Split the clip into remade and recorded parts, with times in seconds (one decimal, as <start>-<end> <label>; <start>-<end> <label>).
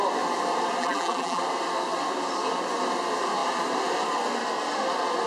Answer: 0.0-0.8 recorded; 0.8-1.4 remade; 1.4-5.3 recorded